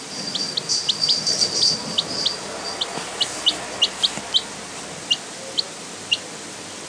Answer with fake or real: real